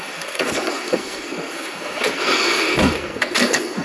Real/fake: fake